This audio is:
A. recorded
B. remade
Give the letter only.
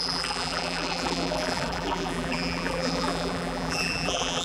B